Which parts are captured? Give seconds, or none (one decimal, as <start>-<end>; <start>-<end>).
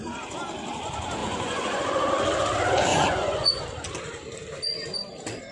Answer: 0.0-1.2; 2.1-2.9; 3.6-5.5